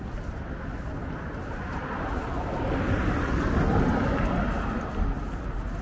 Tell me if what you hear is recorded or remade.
recorded